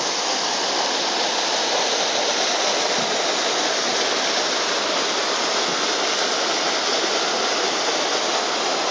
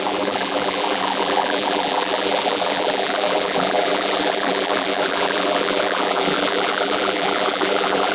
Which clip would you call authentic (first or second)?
first